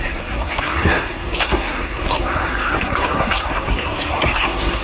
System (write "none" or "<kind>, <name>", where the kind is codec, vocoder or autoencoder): codec, SNAC